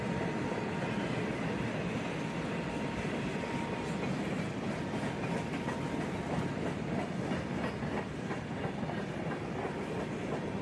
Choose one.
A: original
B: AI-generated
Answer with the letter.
A